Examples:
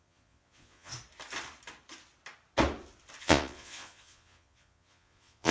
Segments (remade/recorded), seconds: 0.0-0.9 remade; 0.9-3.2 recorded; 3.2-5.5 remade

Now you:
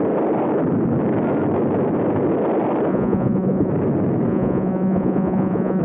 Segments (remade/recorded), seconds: 0.0-2.9 recorded; 2.9-3.7 remade; 3.7-4.3 recorded; 4.3-5.8 remade

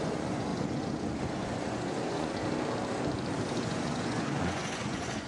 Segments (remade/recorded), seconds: 0.0-2.4 remade; 2.4-3.6 recorded; 3.6-5.3 remade